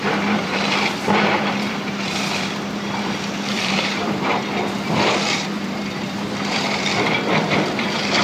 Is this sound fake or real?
fake